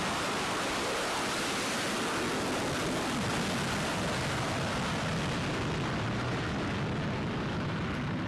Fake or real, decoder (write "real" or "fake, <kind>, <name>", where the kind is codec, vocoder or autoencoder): real